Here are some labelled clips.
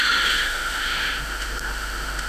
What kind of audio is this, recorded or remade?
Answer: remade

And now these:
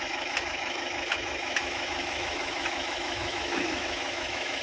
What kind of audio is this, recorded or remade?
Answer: remade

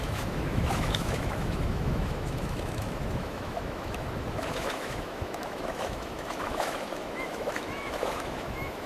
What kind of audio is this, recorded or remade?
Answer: remade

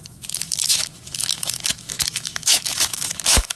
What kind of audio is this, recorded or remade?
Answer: remade